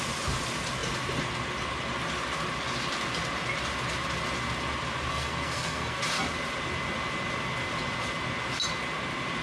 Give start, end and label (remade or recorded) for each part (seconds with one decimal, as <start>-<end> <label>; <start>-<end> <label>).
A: 0.0-5.1 recorded; 5.1-6.0 remade; 6.0-9.4 recorded